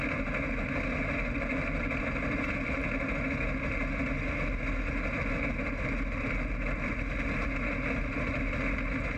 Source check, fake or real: real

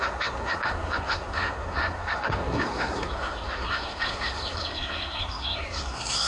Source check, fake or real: fake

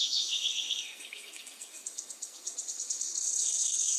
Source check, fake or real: fake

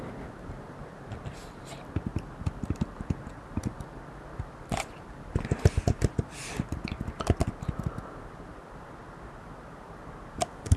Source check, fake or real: real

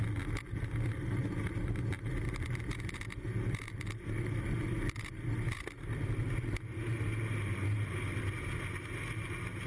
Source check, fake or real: real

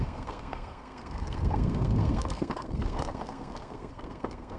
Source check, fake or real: fake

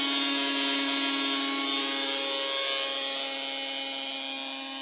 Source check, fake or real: real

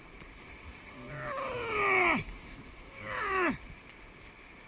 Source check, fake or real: real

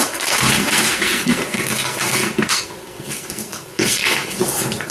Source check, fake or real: fake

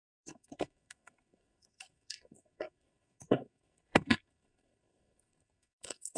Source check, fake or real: fake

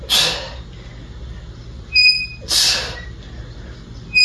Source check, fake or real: real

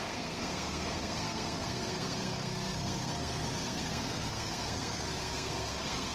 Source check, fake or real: fake